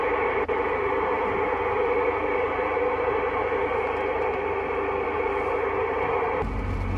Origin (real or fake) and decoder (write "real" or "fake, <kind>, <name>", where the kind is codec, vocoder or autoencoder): real